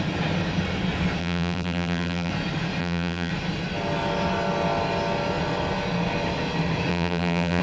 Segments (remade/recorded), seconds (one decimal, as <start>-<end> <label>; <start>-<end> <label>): 0.0-1.2 recorded; 1.2-2.3 remade; 2.3-2.8 recorded; 2.8-3.3 remade; 3.3-6.9 recorded; 6.9-7.6 remade